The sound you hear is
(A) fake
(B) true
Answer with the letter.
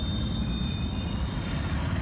B